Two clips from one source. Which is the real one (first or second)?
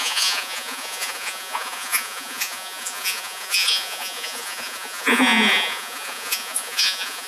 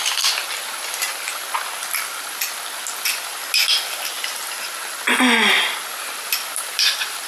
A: second